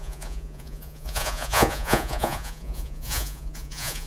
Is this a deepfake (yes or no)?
yes